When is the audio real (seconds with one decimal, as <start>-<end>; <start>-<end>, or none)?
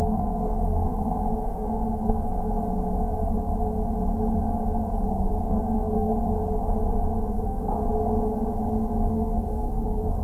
2.3-5.1; 6.1-7.3; 7.7-9.1